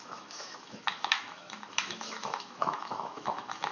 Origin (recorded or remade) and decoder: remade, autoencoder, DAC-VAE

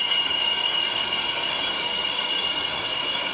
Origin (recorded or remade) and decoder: remade, codec, DAC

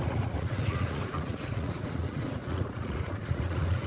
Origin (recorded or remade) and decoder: remade, vocoder, Vocos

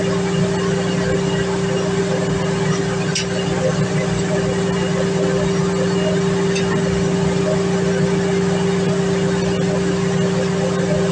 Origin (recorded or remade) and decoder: recorded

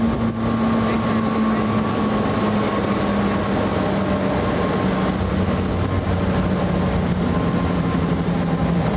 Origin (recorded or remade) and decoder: recorded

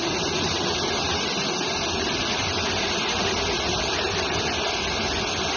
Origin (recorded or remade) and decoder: recorded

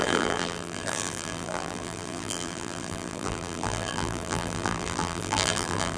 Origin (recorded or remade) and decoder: remade, vocoder, BigVGAN v2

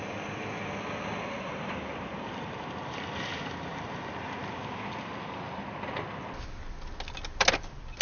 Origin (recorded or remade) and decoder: recorded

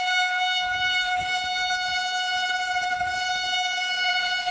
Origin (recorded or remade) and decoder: remade, autoencoder, DAC-VAE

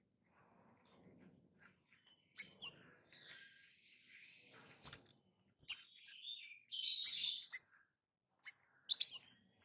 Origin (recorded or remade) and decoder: recorded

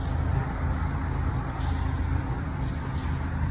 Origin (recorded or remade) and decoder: recorded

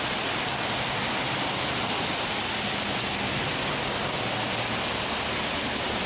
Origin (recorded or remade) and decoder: recorded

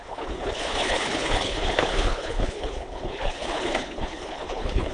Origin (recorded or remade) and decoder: remade, codec, HILCodec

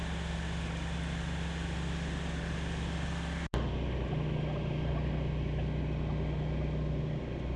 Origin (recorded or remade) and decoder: recorded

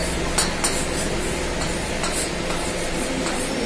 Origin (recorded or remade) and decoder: recorded